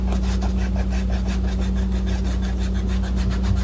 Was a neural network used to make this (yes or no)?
no